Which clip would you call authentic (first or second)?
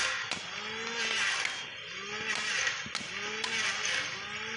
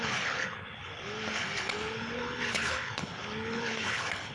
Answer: first